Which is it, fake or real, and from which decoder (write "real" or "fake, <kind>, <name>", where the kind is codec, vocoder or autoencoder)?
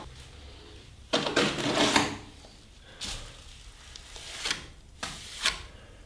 real